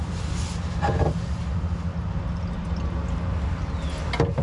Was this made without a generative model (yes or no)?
yes